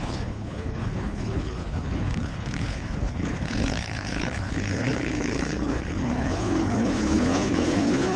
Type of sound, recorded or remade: remade